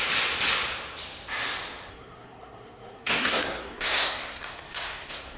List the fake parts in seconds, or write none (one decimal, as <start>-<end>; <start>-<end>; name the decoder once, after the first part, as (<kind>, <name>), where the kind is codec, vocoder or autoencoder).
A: 1.9-5.4 (codec, SNAC)